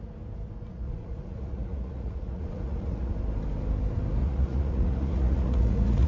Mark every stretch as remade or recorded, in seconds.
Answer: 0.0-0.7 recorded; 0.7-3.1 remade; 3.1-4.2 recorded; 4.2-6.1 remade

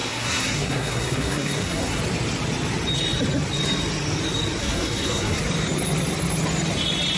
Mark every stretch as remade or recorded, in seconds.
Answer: 0.0-2.0 remade; 2.0-4.6 recorded; 4.6-5.4 remade; 5.4-7.2 recorded

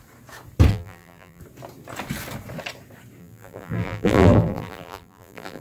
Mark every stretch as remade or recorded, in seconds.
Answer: 0.0-0.7 recorded; 0.7-1.4 remade; 1.4-3.2 recorded; 3.2-5.6 remade

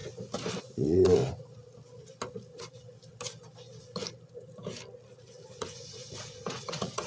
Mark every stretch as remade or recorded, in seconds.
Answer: 0.0-0.6 recorded; 0.6-1.2 remade; 1.2-5.5 recorded; 5.5-7.1 remade